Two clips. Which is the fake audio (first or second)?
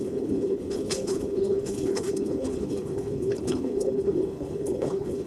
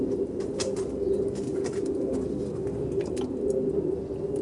first